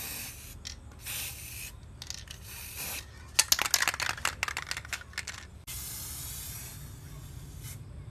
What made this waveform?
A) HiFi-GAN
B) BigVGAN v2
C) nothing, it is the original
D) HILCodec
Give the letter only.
C